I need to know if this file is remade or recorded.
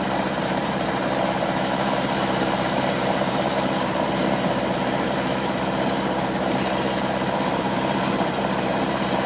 remade